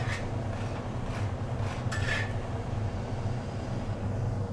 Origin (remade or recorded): recorded